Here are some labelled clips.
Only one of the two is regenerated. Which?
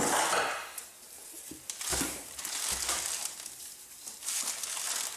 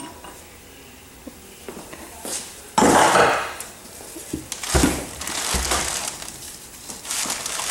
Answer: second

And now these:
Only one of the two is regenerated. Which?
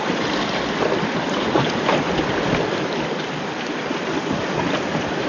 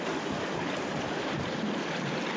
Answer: first